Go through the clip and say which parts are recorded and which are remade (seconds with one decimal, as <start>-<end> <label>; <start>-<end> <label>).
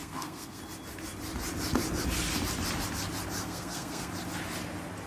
0.0-0.6 remade; 0.6-3.4 recorded; 3.4-4.1 remade; 4.1-5.1 recorded